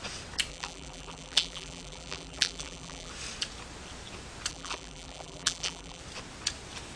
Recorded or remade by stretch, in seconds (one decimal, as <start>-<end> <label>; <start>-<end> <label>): 0.0-0.5 recorded; 0.5-3.1 remade; 3.1-4.5 recorded; 4.5-6.0 remade; 6.0-7.0 recorded